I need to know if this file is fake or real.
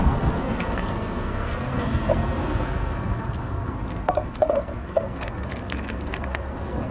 fake